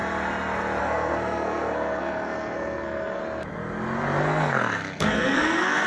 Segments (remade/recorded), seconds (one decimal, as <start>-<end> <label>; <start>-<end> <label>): 0.0-0.8 recorded; 0.8-3.2 remade; 3.2-4.2 recorded; 4.2-5.9 remade